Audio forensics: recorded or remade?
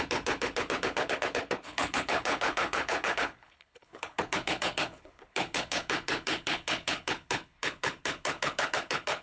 remade